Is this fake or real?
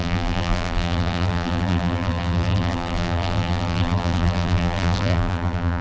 fake